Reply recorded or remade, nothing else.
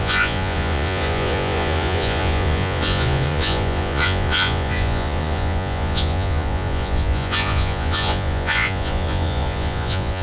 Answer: remade